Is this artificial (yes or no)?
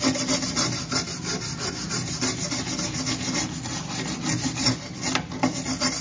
no